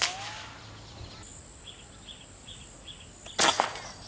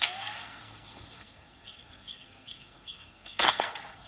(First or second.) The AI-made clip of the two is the second